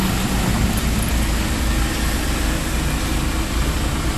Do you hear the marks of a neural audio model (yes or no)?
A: no